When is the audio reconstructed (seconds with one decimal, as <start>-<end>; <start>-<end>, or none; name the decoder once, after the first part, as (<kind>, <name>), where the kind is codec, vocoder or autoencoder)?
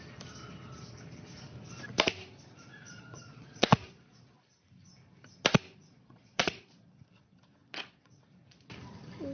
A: 2.7-4.2 (vocoder, Vocos); 5.7-7.0; 7.6-8.2